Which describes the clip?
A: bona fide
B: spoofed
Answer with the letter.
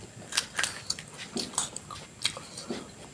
A